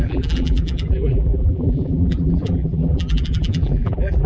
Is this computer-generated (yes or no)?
yes